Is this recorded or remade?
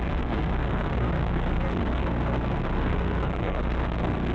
remade